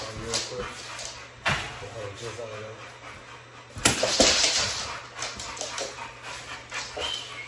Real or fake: real